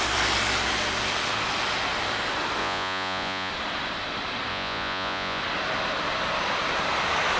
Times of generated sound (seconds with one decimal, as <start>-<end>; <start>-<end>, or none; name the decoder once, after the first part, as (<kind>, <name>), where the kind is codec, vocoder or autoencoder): 2.6-3.5 (vocoder, Vocos); 4.5-5.4